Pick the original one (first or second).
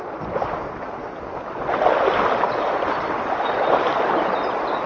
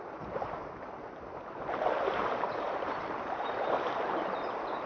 first